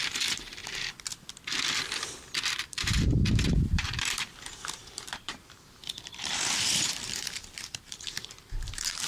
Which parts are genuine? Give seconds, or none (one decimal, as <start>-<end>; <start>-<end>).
0.6-2.6